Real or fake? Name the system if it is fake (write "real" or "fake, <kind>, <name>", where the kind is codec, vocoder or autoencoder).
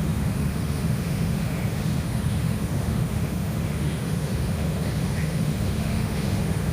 fake, autoencoder, DAC-VAE